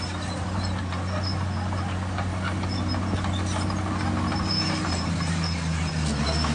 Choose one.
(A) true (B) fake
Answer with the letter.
A